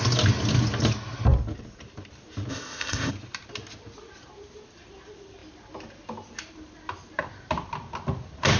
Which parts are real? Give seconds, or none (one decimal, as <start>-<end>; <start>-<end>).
0.0-2.5; 3.1-8.6